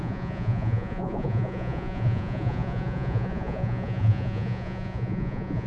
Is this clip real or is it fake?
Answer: fake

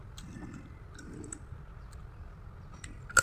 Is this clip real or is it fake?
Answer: real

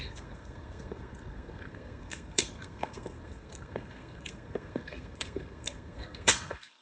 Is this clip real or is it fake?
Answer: fake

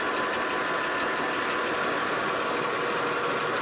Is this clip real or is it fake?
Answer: real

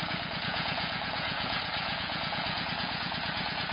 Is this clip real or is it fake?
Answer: fake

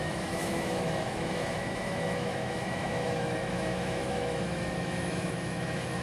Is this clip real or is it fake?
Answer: fake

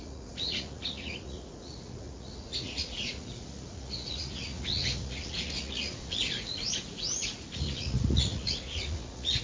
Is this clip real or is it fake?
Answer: fake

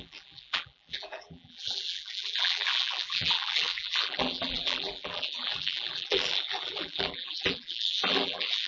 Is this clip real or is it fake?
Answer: fake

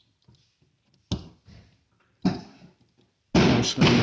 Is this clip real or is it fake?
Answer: real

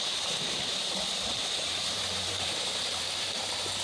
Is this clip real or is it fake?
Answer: fake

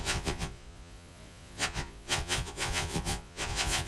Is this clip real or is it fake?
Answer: fake